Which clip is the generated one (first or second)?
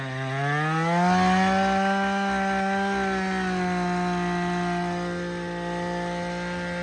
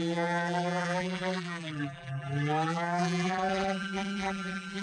second